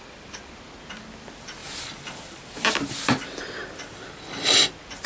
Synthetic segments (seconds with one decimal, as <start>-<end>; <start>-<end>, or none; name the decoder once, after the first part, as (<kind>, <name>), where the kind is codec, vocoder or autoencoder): 1.6-4.2 (vocoder, BigVGAN v2)